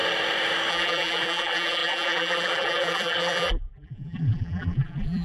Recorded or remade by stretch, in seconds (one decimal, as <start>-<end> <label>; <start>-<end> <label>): 0.0-0.7 recorded; 0.7-5.2 remade